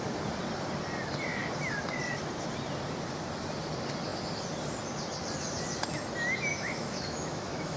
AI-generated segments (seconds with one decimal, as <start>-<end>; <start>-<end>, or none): 6.5-7.8